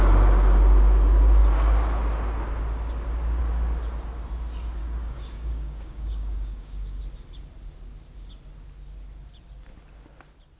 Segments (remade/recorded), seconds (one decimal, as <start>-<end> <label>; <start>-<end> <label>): 0.0-4.8 recorded; 4.8-7.0 remade; 7.0-10.6 recorded